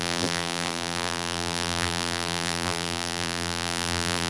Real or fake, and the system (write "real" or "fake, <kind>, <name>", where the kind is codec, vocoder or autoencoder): fake, vocoder, BigVGAN v2